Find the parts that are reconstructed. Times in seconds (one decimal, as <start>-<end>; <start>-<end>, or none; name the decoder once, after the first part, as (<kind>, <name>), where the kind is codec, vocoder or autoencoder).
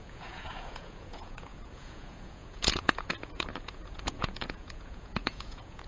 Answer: 0.0-5.9 (vocoder, Vocos)